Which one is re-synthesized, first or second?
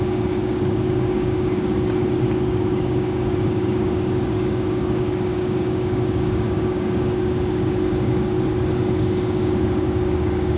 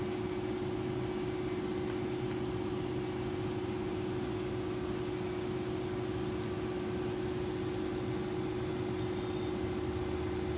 first